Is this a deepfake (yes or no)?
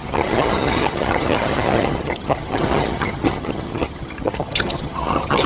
yes